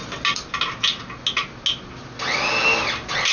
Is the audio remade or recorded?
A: recorded